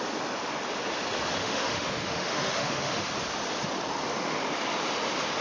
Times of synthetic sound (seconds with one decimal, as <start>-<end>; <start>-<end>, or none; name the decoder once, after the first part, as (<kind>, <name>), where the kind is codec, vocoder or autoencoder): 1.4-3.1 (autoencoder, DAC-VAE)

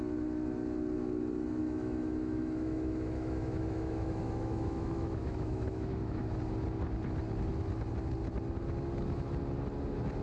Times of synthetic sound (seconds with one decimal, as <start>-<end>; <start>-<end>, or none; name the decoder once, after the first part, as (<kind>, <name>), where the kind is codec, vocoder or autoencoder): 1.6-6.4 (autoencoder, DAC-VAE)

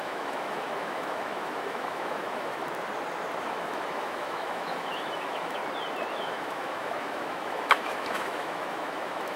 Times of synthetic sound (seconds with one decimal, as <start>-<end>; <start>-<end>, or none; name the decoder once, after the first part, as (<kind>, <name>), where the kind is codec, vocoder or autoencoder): 0.0-2.6 (autoencoder, DAC-VAE); 3.4-5.6; 6.1-9.4